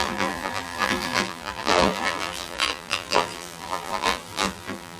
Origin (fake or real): fake